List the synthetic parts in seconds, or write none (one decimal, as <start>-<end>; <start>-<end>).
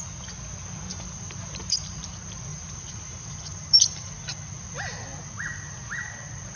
0.9-1.6; 2.5-4.1